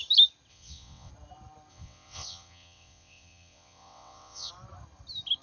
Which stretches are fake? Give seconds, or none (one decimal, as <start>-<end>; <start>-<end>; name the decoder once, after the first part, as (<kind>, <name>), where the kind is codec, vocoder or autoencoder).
0.5-1.1 (vocoder, WaveNeXt); 1.7-4.5